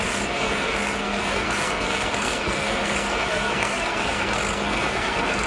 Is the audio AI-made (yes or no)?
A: yes